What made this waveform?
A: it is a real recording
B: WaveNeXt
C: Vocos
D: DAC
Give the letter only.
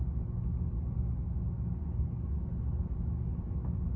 A